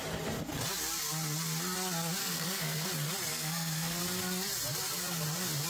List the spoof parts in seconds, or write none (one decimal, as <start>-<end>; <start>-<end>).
2.2-2.9; 3.3-4.0